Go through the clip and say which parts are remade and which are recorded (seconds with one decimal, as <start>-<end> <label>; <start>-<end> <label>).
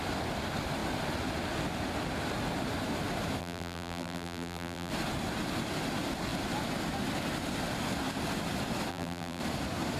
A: 0.0-3.4 recorded; 3.4-4.9 remade; 4.9-8.9 recorded; 8.9-9.4 remade; 9.4-10.0 recorded